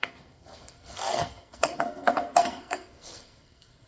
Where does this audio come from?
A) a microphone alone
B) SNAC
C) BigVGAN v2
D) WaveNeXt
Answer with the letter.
B